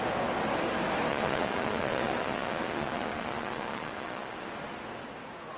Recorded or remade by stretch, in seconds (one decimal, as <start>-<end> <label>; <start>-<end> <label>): 0.0-1.1 recorded; 1.1-4.5 remade; 4.5-5.6 recorded